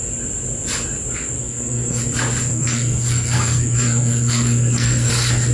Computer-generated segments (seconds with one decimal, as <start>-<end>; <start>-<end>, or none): 1.4-2.0; 2.5-5.1